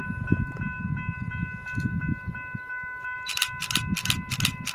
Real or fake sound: real